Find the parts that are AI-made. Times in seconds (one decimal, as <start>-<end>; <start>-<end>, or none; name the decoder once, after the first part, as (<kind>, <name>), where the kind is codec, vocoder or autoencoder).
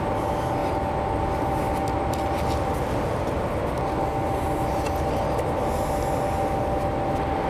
none